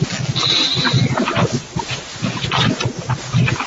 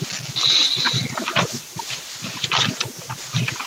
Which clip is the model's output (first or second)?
second